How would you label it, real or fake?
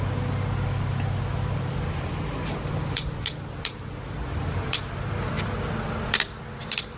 real